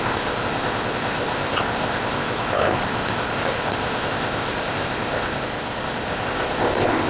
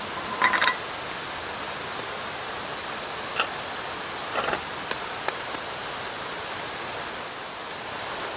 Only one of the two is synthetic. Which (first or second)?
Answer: first